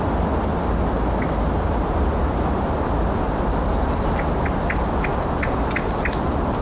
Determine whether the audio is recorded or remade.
recorded